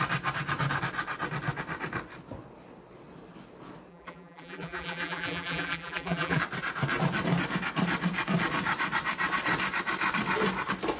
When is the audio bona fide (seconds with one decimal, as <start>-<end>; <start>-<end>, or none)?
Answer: 0.0-3.9; 6.4-11.0